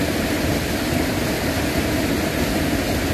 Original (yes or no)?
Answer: yes